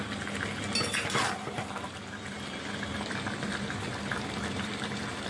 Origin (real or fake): real